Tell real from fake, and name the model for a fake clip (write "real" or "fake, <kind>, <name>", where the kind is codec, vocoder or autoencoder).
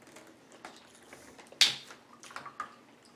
real